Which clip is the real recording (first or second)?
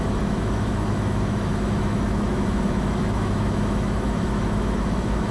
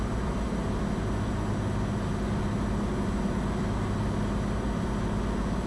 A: second